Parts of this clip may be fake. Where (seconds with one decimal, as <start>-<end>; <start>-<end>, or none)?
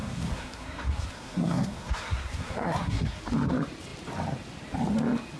0.0-3.2